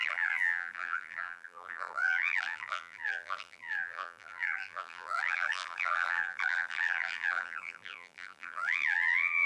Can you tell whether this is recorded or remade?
remade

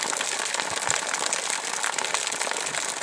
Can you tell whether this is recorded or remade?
recorded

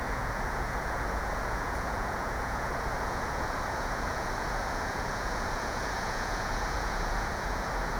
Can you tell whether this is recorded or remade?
remade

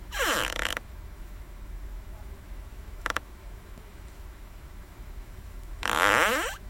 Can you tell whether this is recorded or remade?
remade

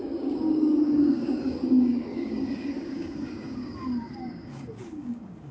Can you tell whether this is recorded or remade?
remade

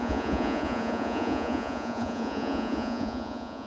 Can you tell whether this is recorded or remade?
remade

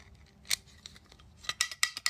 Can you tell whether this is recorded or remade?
recorded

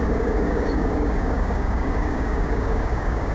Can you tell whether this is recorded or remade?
remade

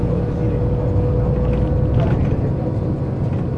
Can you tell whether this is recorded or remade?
recorded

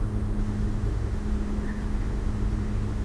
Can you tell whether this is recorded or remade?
remade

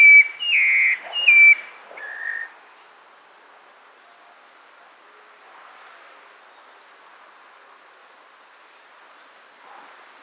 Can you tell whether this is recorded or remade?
recorded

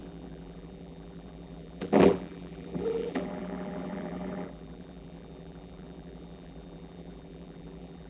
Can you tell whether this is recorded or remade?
remade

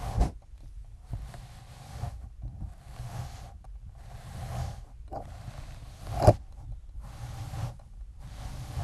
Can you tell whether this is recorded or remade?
recorded